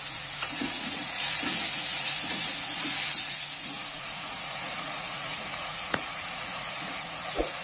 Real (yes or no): no